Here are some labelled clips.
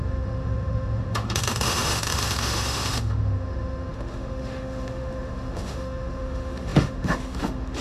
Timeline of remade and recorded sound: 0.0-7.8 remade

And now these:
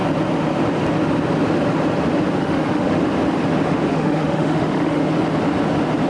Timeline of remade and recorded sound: 0.0-2.4 recorded; 2.4-3.0 remade; 3.0-3.9 recorded; 3.9-5.0 remade; 5.0-6.1 recorded

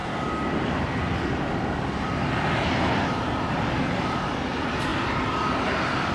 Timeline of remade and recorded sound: 0.0-6.1 recorded

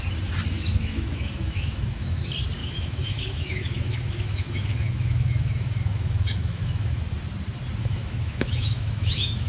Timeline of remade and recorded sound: 0.0-0.7 recorded; 0.7-2.2 remade; 2.2-2.6 recorded; 2.6-7.0 remade; 7.0-7.8 recorded; 7.8-9.5 remade

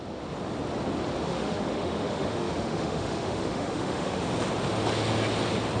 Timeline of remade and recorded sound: 0.0-1.3 recorded; 1.3-4.2 remade; 4.2-5.8 recorded

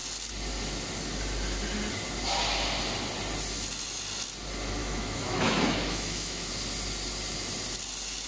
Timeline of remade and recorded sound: 0.0-4.8 recorded; 4.8-6.5 remade; 6.5-8.3 recorded